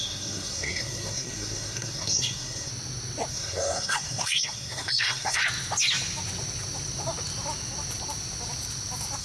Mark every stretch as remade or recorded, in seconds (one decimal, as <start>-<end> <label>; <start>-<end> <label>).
0.0-2.7 remade; 2.7-3.3 recorded; 3.3-5.4 remade; 5.4-9.2 recorded